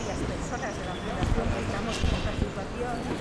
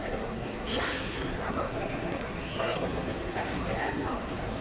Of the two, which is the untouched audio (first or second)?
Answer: first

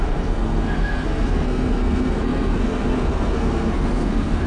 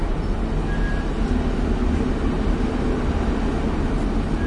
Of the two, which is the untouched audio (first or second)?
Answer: second